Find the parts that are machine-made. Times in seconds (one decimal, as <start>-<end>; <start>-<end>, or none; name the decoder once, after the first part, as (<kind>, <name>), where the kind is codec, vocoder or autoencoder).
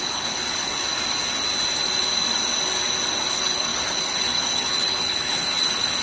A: 0.0-0.8 (codec, HILCodec); 3.3-6.0